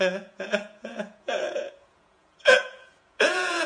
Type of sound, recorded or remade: remade